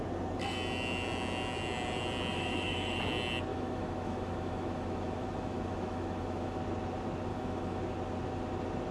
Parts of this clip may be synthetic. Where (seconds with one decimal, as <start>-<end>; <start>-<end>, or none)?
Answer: 2.3-3.0; 3.5-6.6; 7.3-7.8